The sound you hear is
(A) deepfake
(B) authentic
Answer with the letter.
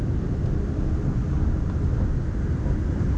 B